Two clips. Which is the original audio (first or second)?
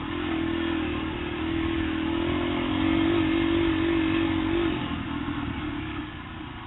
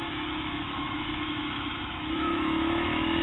first